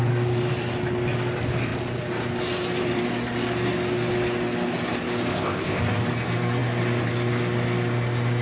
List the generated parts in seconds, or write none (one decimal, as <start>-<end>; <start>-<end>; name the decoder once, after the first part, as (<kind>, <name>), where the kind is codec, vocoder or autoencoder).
5.3-5.8 (codec, ZipCodec)